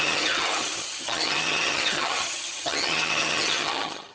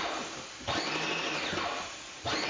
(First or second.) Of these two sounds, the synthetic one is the first